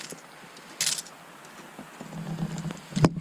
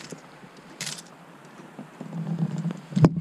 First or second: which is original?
first